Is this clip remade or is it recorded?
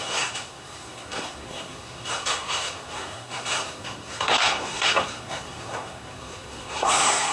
remade